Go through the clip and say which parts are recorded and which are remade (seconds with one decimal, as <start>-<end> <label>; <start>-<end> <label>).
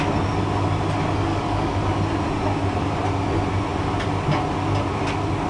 0.0-1.3 recorded; 1.3-1.8 remade; 1.8-5.5 recorded